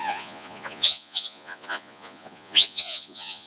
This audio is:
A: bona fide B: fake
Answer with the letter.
B